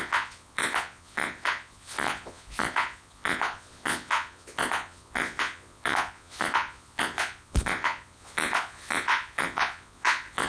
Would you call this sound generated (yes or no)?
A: yes